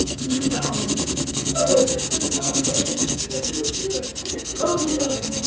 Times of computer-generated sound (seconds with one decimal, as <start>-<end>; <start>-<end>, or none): 0.0-0.8; 1.3-1.9; 2.4-3.8; 4.4-5.5